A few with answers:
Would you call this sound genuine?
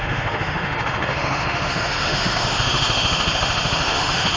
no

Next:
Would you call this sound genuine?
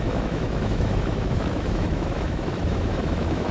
no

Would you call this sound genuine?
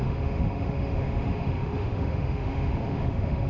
no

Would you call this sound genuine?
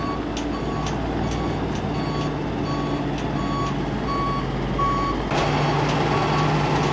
yes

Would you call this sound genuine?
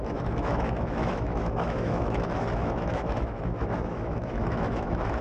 no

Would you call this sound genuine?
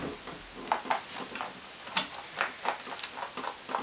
yes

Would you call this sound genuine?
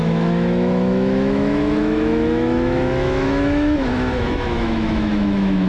no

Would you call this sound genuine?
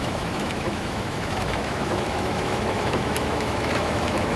no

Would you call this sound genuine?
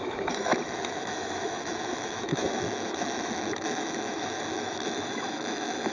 no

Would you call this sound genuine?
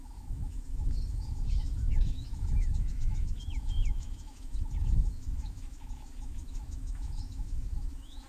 no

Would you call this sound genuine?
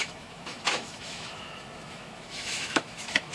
no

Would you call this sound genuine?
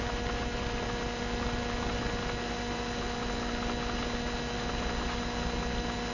yes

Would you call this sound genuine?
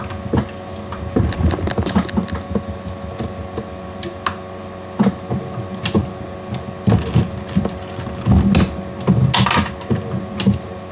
yes